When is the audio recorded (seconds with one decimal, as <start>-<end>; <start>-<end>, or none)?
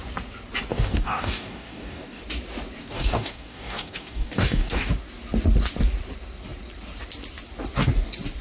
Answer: 0.0-0.7; 2.2-2.8; 4.9-8.4